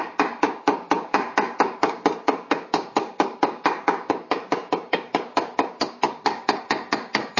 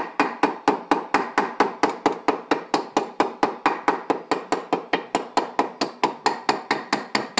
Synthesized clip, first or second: first